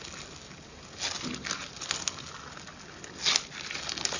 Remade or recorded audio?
recorded